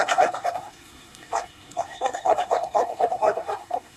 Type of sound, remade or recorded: remade